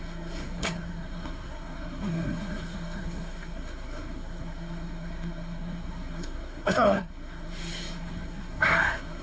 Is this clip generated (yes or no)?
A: yes